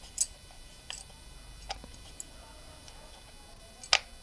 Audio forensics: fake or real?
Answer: real